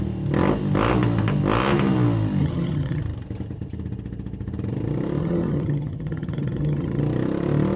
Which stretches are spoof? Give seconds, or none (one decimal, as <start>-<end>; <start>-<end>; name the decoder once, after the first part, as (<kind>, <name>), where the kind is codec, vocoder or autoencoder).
2.4-3.0 (vocoder, HiFi-GAN); 5.2-7.0